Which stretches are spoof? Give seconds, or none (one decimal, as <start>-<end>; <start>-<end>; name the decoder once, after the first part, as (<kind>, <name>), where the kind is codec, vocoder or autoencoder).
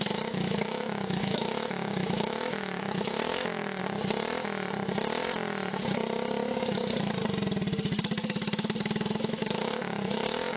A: 0.0-3.8 (autoencoder, DAC-VAE); 8.0-10.6